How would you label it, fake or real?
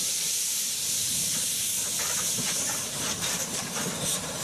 fake